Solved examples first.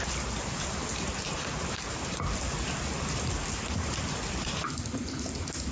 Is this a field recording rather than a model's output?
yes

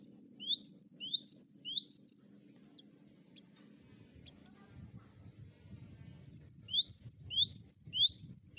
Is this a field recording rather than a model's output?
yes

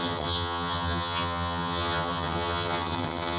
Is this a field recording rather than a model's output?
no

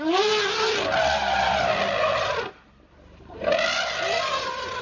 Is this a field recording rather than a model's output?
yes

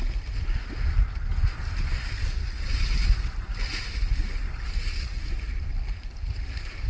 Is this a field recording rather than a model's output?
yes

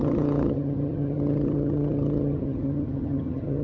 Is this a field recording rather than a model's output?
no